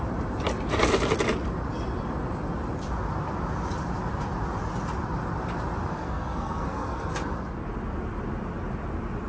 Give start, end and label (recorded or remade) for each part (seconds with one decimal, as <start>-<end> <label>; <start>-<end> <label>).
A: 0.0-5.9 recorded; 5.9-7.1 remade; 7.1-9.3 recorded